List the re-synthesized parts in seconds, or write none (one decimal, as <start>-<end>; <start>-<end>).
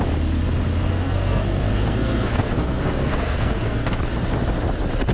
0.9-4.0